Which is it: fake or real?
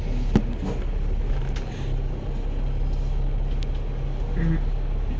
real